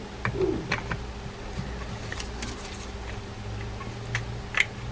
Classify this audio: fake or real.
real